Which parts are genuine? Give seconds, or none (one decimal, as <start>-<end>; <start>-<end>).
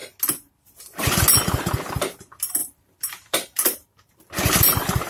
0.0-2.6